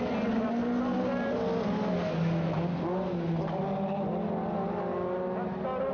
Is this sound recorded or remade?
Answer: recorded